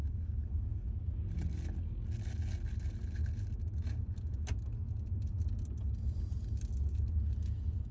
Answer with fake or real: real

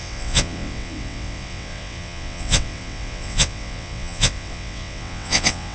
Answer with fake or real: fake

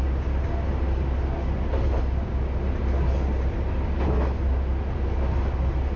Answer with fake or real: real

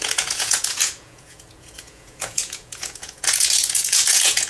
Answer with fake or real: fake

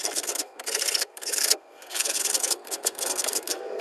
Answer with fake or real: fake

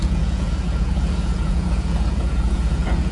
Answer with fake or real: fake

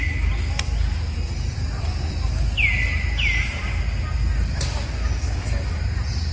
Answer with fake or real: real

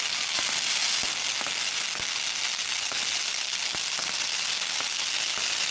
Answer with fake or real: real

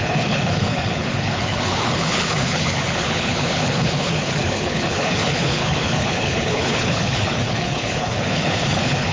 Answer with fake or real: fake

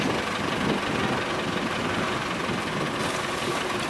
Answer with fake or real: real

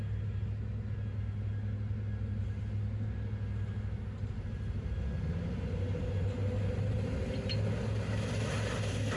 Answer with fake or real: real